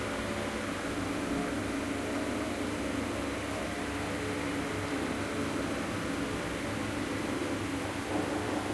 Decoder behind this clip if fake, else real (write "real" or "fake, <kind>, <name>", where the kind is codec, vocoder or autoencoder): real